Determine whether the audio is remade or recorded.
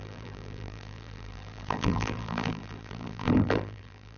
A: remade